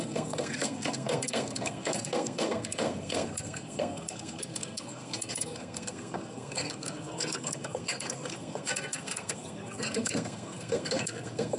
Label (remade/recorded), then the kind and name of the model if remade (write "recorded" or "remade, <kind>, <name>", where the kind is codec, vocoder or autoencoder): remade, codec, SNAC